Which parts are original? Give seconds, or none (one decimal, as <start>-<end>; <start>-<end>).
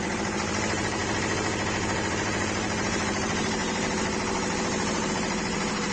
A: 1.0-2.1